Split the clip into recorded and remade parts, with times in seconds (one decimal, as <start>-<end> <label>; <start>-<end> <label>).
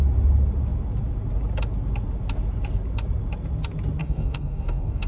0.0-4.0 recorded; 4.0-5.1 remade